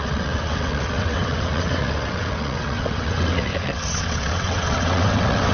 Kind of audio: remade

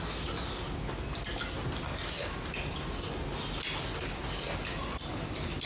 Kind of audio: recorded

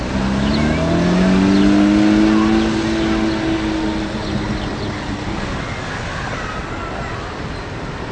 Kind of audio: recorded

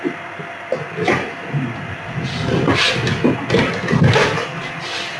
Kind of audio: recorded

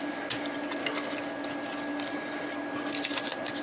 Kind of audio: recorded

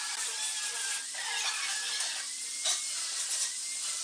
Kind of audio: recorded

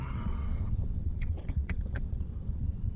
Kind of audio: remade